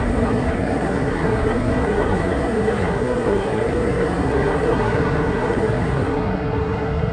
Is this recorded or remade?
remade